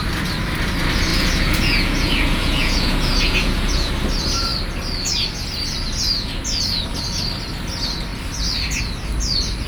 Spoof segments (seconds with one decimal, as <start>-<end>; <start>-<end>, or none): 1.1-3.9